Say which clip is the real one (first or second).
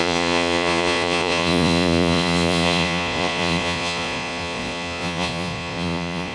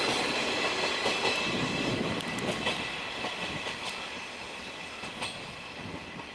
second